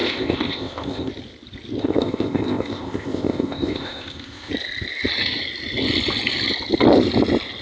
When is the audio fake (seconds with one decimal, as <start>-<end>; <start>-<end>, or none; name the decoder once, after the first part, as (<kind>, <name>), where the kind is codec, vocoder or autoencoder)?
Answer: 0.0-1.1 (codec, ZipCodec); 1.8-4.5